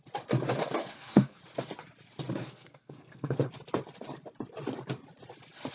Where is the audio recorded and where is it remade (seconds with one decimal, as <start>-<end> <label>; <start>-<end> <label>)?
0.0-0.8 recorded; 0.8-1.4 remade; 1.4-2.4 recorded; 2.4-3.5 remade; 3.5-5.7 recorded